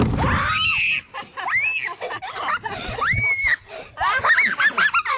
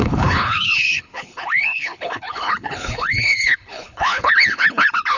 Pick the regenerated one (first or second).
second